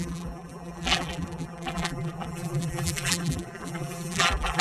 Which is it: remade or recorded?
remade